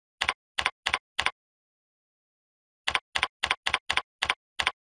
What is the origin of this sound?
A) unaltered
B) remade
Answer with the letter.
A